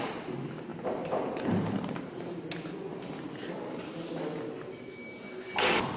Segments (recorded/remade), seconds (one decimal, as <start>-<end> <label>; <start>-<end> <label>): 0.0-0.7 recorded; 0.7-2.1 remade; 2.1-2.9 recorded; 2.9-4.1 remade; 4.1-6.0 recorded